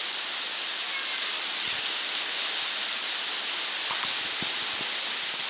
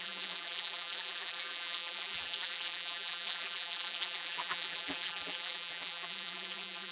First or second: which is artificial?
second